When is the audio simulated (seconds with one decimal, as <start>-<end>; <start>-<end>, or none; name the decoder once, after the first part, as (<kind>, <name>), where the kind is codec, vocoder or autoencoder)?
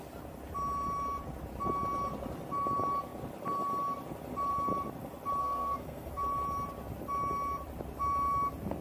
5.4-6.1 (codec, SNAC)